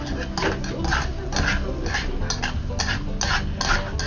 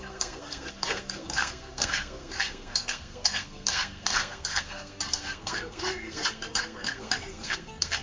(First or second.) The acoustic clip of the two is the first